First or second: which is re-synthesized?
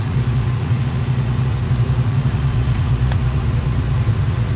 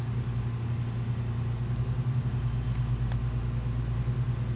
first